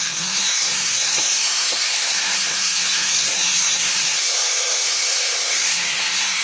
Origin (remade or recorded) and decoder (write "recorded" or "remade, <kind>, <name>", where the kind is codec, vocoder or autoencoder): remade, codec, SNAC